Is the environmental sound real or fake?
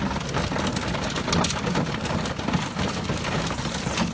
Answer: real